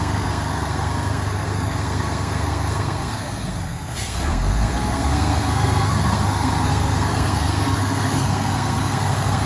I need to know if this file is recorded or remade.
remade